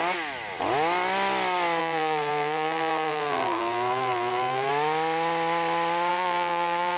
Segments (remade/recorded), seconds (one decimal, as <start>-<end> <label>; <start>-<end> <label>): 0.0-1.8 recorded; 1.8-4.7 remade; 4.7-6.1 recorded; 6.1-7.0 remade